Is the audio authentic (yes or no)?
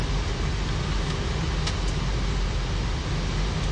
yes